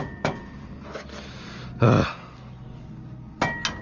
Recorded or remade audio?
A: recorded